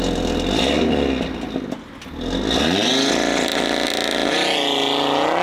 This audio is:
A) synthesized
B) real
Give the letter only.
B